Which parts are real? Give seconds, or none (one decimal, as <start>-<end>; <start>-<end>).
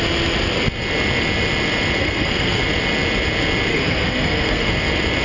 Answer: 0.0-2.0; 2.6-3.7; 4.7-5.2